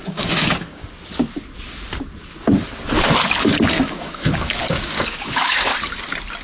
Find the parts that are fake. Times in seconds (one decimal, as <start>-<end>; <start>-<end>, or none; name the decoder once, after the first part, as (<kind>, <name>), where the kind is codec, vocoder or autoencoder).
0.0-0.8 (codec, DAC); 3.4-5.7